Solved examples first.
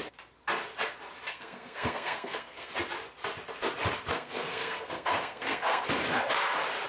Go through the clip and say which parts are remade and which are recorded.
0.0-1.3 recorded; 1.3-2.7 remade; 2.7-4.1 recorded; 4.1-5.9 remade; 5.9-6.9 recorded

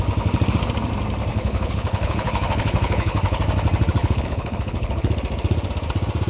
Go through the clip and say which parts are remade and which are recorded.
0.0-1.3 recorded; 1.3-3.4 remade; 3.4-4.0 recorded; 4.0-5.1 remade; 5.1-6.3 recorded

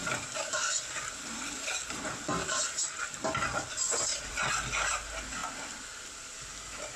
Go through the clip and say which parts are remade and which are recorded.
0.0-1.1 remade; 1.1-2.4 recorded; 2.4-3.2 remade; 3.2-7.0 recorded

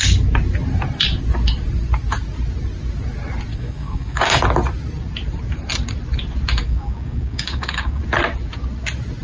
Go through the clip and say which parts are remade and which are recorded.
0.0-3.5 recorded; 3.5-4.4 remade; 4.4-6.6 recorded; 6.6-8.0 remade; 8.0-9.2 recorded

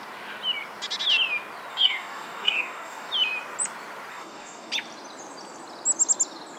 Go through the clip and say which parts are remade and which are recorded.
0.0-1.7 recorded; 1.7-3.1 remade; 3.1-4.1 recorded; 4.1-4.7 remade; 4.7-6.6 recorded

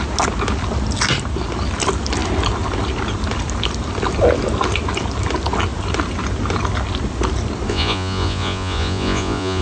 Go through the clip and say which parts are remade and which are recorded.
0.0-7.7 recorded; 7.7-9.6 remade

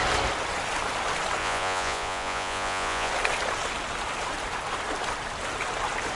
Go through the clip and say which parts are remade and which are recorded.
0.0-1.4 recorded; 1.4-3.1 remade; 3.1-6.2 recorded

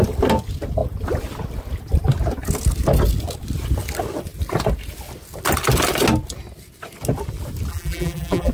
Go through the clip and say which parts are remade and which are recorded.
0.0-7.7 recorded; 7.7-8.5 remade